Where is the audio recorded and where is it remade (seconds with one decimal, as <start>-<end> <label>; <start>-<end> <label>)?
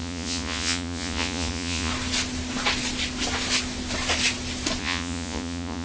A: 0.0-1.9 remade; 1.9-4.8 recorded; 4.8-5.8 remade